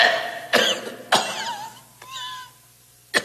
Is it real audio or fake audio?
real